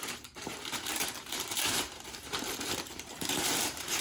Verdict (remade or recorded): remade